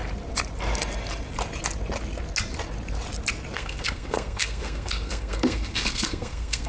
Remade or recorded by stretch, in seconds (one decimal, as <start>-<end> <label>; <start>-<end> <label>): 0.0-3.5 recorded; 3.5-6.7 remade